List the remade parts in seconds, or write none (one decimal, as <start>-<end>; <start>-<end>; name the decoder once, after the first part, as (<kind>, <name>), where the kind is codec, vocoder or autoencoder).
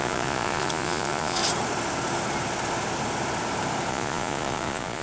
0.0-1.4 (vocoder, Vocos); 3.9-5.0